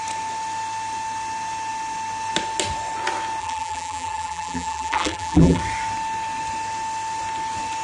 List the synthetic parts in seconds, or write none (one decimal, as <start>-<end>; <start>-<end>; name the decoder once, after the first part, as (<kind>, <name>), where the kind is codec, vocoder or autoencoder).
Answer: 3.4-5.6 (vocoder, BigVGAN v2)